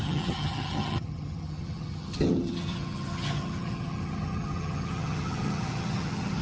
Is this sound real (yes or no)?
no